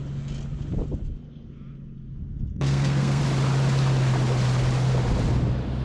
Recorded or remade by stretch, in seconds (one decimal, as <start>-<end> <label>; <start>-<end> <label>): 0.0-2.5 recorded; 2.5-3.2 remade; 3.2-5.8 recorded